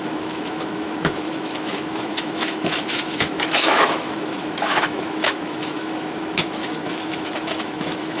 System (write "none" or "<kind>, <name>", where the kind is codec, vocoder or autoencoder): autoencoder, DAC-VAE